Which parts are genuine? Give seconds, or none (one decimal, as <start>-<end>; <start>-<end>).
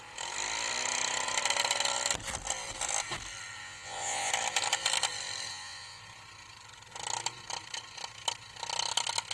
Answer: 0.0-3.6; 4.3-5.5; 6.0-9.3